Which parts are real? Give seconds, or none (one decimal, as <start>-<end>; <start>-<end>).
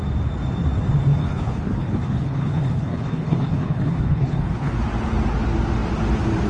0.0-1.2; 4.7-6.5